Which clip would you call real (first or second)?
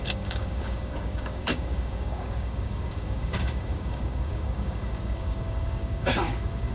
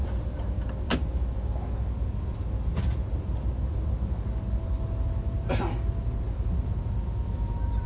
second